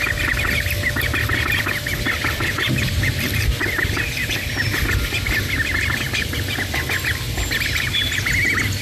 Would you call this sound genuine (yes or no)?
yes